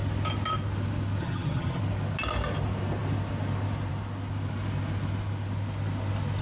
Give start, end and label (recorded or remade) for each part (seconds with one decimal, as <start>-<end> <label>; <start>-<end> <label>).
0.0-1.2 recorded; 1.2-1.8 remade; 1.8-6.4 recorded